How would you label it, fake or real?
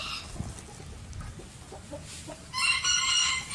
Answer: real